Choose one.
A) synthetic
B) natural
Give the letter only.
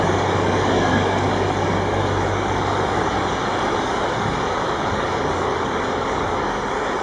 A